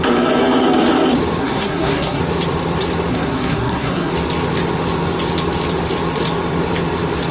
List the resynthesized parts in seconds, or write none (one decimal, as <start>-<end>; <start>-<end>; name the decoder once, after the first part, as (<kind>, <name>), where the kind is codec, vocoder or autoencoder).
1.4-2.2 (codec, SNAC); 3.1-4.1